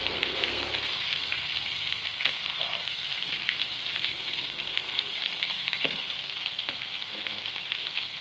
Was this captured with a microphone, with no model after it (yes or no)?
no